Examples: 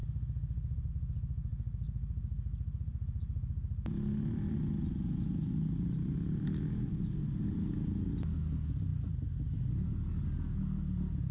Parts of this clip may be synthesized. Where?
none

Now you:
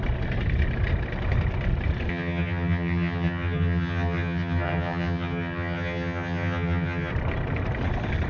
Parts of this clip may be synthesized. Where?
2.1-7.1 (vocoder, HiFi-GAN)

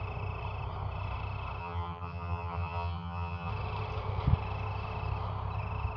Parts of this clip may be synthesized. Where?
1.6-3.5 (vocoder, HiFi-GAN)